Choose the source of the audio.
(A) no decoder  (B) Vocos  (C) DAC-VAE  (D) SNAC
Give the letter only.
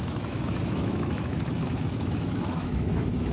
C